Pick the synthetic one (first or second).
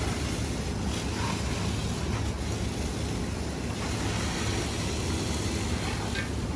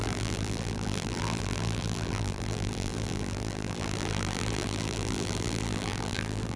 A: second